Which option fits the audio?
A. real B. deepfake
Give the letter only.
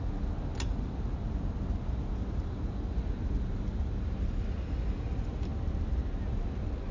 A